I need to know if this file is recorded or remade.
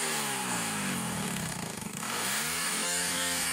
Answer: remade